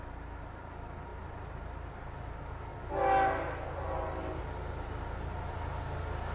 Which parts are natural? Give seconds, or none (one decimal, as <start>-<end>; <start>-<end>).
0.0-6.3